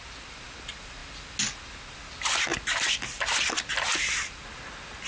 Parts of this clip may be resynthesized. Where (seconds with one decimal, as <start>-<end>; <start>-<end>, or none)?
none